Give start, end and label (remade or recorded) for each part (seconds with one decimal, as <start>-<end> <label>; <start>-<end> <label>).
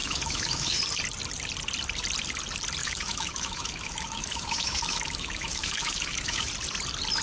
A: 0.0-0.8 remade; 0.8-2.8 recorded; 2.8-6.5 remade; 6.5-7.2 recorded